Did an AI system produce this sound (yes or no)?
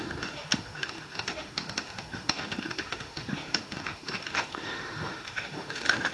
yes